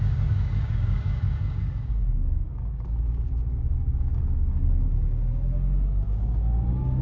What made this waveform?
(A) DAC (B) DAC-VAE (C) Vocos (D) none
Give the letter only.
A